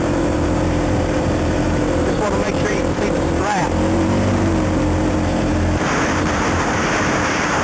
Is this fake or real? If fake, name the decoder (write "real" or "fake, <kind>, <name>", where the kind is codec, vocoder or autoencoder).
fake, vocoder, BigVGAN v2